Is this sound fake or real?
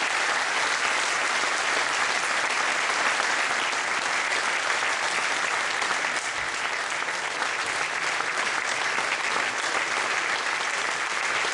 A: real